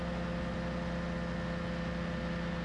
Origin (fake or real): real